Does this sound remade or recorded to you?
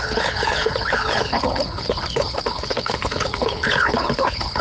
remade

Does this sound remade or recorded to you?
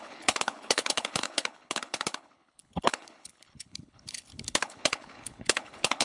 remade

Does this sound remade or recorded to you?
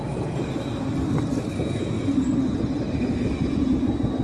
recorded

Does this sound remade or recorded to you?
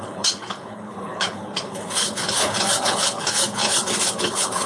remade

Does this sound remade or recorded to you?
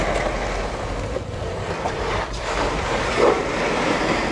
recorded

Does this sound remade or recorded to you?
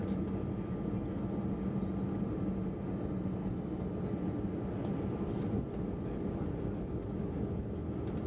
recorded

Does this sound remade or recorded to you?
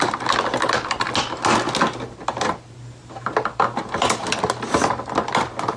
recorded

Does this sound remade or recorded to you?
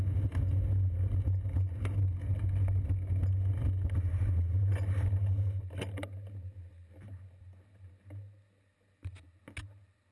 recorded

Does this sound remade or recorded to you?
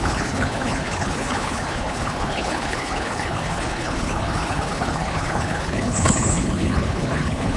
remade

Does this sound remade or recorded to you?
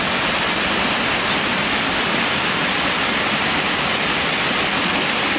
recorded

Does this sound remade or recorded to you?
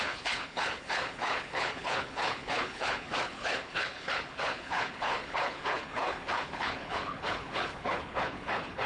remade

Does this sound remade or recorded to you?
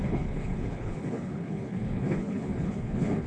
remade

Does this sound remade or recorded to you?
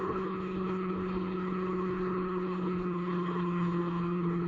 remade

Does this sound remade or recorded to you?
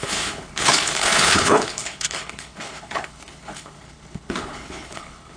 remade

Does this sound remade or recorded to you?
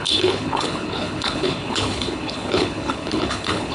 remade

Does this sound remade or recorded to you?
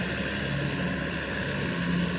recorded